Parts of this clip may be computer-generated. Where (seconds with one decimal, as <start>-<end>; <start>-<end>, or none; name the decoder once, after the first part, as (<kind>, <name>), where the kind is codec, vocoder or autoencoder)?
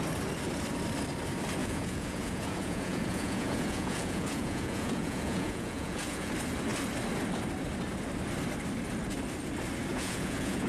1.6-6.3 (vocoder, Vocos); 9.9-10.7